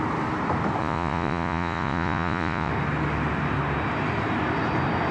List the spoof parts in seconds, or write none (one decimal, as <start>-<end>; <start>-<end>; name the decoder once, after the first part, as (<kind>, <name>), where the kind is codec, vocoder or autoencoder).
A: 0.8-2.7 (vocoder, Vocos)